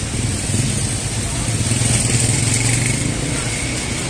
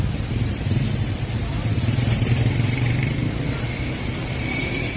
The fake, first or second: second